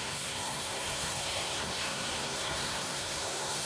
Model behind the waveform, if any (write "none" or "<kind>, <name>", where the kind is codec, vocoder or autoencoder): codec, SNAC